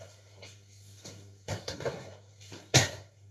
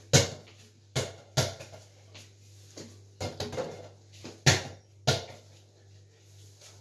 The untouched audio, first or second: second